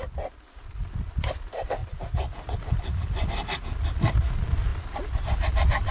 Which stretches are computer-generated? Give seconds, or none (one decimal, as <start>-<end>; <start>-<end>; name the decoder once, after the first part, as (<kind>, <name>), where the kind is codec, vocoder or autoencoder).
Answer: none